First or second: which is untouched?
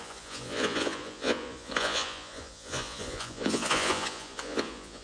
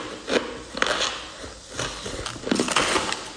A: second